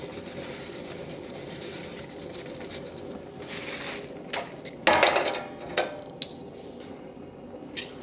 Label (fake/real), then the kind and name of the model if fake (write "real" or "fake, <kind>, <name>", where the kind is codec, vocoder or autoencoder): real